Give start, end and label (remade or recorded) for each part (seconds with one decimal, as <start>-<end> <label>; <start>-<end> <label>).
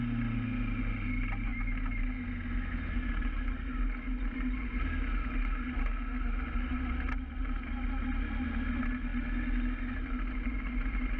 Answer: 0.0-11.2 recorded